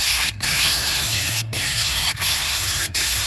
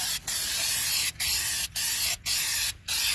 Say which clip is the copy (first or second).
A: first